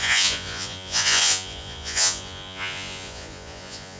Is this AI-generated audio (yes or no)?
yes